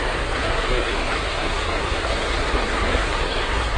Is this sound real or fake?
fake